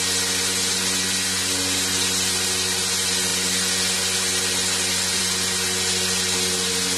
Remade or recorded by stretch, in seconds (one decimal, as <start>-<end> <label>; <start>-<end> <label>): 0.0-7.0 recorded